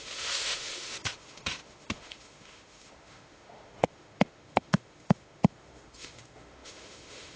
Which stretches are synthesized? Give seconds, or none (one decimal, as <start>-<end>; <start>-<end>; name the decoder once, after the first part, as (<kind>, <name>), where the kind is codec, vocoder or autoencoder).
0.0-7.4 (autoencoder, DAC-VAE)

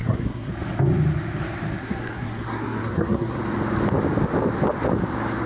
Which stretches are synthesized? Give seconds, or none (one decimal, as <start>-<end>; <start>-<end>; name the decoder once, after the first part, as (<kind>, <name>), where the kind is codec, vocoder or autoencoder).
0.0-0.5 (codec, SNAC); 1.8-3.4

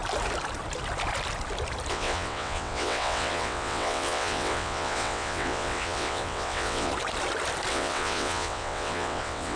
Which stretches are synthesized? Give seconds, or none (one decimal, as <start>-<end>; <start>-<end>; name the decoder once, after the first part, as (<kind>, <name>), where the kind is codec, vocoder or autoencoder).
1.9-6.9 (vocoder, WaveNeXt); 7.7-9.6

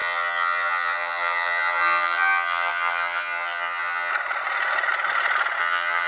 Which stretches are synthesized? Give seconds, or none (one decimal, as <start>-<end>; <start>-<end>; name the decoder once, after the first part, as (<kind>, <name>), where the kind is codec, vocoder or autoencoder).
0.0-4.1 (vocoder, HiFi-GAN); 5.6-6.1

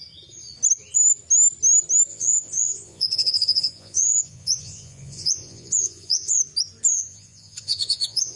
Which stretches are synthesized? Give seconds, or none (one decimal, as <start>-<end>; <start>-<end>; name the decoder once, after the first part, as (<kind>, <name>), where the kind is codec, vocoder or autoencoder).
2.1-6.4 (vocoder, Vocos); 6.9-8.4

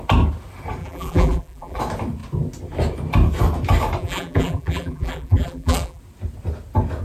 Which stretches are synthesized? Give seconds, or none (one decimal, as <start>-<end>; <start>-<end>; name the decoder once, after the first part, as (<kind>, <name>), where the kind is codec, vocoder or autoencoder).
0.8-1.8 (vocoder, BigVGAN v2); 4.0-6.0

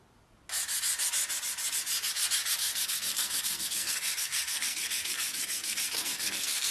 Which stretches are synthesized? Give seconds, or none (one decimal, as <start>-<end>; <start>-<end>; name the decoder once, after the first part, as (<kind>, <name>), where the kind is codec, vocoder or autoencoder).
2.6-6.7 (codec, SNAC)

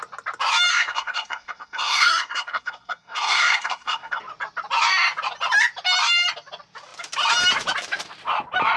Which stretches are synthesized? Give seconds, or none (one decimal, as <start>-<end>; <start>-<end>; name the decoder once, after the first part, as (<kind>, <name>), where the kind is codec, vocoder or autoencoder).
0.7-4.2 (codec, SNAC)